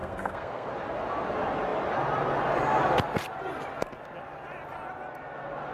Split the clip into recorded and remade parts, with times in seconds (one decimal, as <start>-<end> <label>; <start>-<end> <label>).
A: 0.0-0.7 remade; 0.7-5.7 recorded